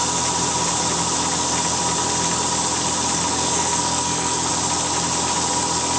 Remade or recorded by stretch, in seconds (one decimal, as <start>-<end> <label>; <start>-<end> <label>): 0.0-3.3 recorded; 3.3-4.5 remade; 4.5-6.0 recorded